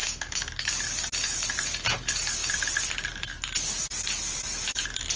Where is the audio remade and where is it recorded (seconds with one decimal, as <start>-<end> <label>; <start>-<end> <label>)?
0.0-0.7 remade; 0.7-5.2 recorded